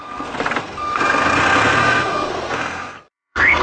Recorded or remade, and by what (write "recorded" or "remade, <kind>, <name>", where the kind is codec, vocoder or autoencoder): remade, codec, SNAC